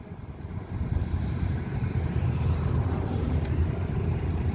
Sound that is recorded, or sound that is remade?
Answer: remade